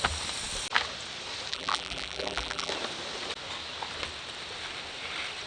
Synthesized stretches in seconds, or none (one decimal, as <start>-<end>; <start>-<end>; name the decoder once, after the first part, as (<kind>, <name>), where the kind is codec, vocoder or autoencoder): 1.5-2.7 (vocoder, BigVGAN v2)